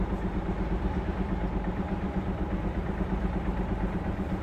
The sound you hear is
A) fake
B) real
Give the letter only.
B